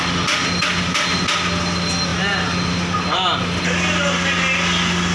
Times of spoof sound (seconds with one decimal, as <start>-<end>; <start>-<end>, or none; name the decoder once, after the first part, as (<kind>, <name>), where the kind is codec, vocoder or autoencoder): none